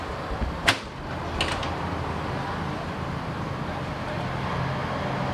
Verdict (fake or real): real